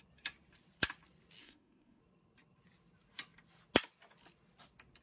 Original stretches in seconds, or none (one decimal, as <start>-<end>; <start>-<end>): 0.0-1.4; 2.0-5.0